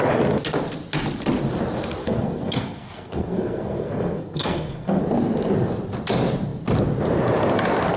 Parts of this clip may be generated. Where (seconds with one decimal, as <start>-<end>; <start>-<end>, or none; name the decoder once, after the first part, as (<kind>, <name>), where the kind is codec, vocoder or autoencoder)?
2.0-5.0 (codec, SNAC)